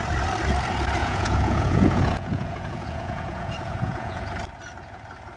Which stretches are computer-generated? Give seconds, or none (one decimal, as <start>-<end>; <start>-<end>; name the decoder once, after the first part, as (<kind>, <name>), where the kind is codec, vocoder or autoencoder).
1.0-4.2 (vocoder, Vocos)

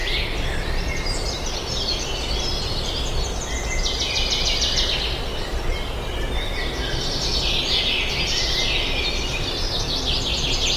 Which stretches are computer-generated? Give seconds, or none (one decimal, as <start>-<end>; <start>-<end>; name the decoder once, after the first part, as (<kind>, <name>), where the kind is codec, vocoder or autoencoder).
none

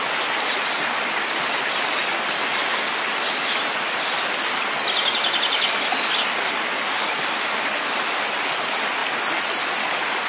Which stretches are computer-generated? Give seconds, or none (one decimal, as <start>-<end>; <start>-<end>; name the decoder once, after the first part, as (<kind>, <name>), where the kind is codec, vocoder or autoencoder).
none